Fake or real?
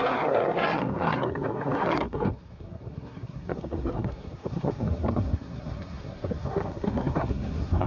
fake